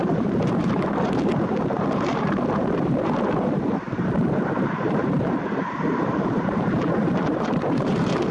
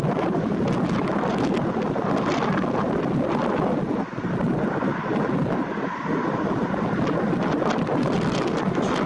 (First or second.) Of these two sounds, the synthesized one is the first